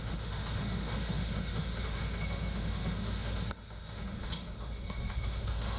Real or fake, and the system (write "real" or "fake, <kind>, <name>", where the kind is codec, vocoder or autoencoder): fake, autoencoder, DAC-VAE